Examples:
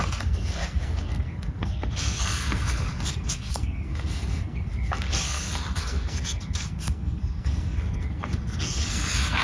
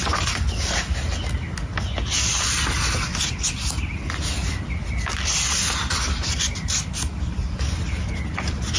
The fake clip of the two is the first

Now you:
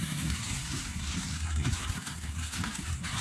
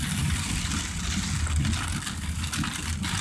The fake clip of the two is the first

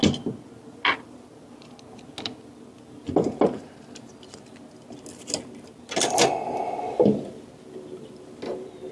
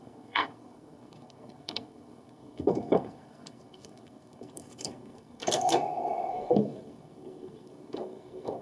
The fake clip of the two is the second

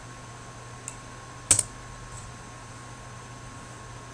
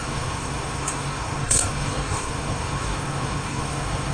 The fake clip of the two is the second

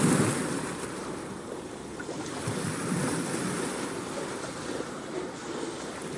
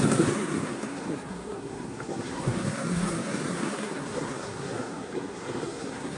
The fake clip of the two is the second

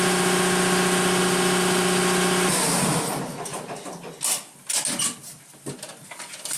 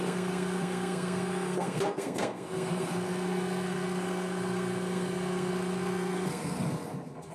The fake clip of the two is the second